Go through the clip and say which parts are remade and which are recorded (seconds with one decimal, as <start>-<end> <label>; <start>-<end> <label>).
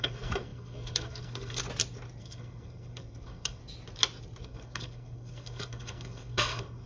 0.0-1.6 remade; 1.6-2.2 recorded; 2.2-3.6 remade; 3.6-4.4 recorded; 4.4-6.9 remade